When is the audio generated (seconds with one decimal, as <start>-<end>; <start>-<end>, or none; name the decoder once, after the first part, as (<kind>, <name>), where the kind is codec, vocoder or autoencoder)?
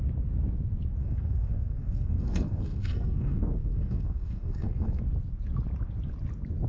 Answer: 1.0-5.0 (codec, SNAC)